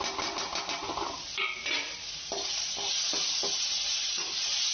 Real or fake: real